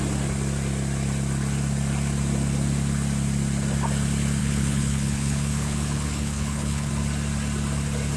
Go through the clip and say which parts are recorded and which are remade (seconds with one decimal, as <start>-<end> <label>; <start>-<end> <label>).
0.0-4.4 recorded; 4.4-6.9 remade; 6.9-8.2 recorded